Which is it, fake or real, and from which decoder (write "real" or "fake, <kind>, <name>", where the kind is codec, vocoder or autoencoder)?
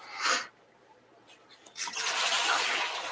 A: real